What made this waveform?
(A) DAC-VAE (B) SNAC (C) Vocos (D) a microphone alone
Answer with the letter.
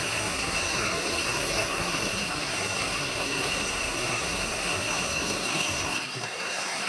B